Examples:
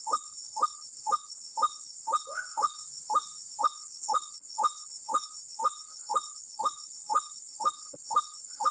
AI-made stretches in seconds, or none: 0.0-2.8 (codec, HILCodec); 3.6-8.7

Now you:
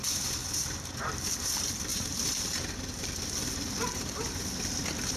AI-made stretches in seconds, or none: 0.4-1.3 (vocoder, BigVGAN v2); 1.9-2.6

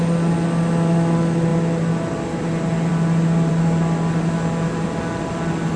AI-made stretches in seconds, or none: none

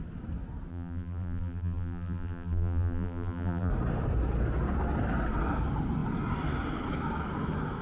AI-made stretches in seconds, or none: 0.7-3.7 (vocoder, BigVGAN v2)

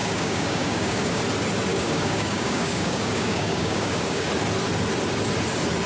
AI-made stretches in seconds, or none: 0.0-1.2 (codec, DAC); 1.7-4.3

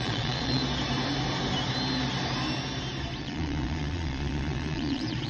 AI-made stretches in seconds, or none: 0.0-0.6 (vocoder, Vocos); 3.2-5.3

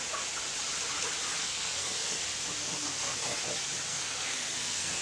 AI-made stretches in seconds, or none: 1.4-2.2 (codec, SNAC); 2.6-3.4; 3.9-5.0

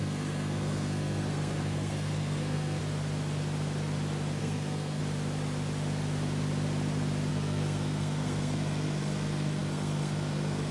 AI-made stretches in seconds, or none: 0.0-2.8 (codec, SNAC); 4.4-5.0; 7.3-10.7